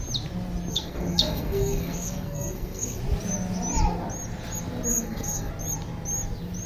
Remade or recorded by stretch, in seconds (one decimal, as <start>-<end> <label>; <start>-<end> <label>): 0.0-0.7 recorded; 0.7-3.0 remade; 3.0-4.9 recorded; 4.9-5.5 remade; 5.5-6.7 recorded